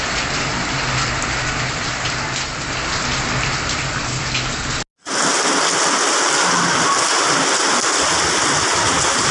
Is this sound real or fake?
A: real